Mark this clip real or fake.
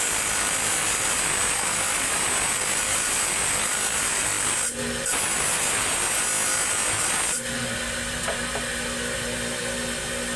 real